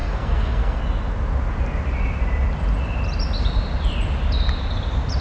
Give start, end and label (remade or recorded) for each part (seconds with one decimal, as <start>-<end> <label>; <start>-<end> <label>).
0.0-0.8 remade; 0.8-5.2 recorded